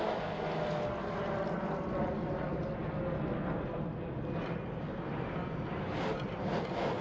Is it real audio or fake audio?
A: real